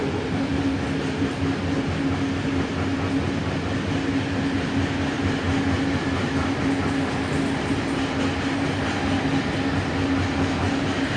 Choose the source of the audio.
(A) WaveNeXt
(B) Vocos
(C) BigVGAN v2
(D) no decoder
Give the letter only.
D